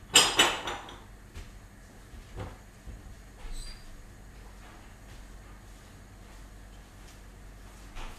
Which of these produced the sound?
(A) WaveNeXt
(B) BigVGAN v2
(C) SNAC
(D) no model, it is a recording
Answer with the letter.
D